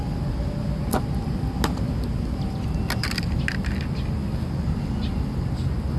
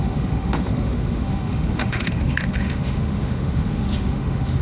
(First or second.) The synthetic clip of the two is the second